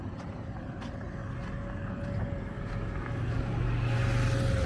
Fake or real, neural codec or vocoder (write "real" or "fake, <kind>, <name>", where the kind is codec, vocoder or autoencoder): real